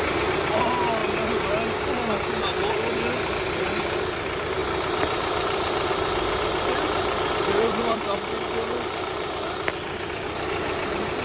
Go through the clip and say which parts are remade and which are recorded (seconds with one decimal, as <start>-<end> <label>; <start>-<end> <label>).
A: 0.0-1.0 remade; 1.0-2.7 recorded; 2.7-11.2 remade

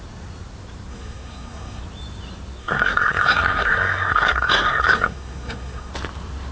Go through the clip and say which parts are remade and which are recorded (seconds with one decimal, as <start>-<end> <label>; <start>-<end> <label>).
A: 0.0-0.9 recorded; 0.9-1.8 remade; 1.8-2.6 recorded; 2.6-5.9 remade; 5.9-6.5 recorded

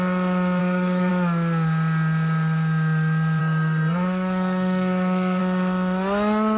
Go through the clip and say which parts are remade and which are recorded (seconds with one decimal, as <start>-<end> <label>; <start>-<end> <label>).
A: 0.0-0.6 recorded; 0.6-1.1 remade; 1.1-3.4 recorded; 3.4-5.4 remade; 5.4-6.6 recorded

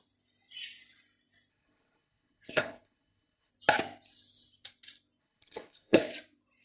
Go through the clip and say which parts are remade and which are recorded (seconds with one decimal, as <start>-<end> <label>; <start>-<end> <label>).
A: 0.0-1.5 recorded; 1.5-3.5 remade; 3.5-5.2 recorded; 5.2-6.1 remade; 6.1-6.6 recorded

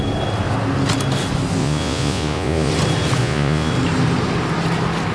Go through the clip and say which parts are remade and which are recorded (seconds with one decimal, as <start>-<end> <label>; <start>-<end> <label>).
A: 0.0-1.6 recorded; 1.6-2.7 remade; 2.7-3.2 recorded; 3.2-3.7 remade; 3.7-5.1 recorded